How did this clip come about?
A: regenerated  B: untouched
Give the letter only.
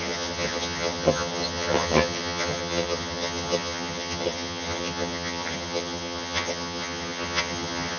A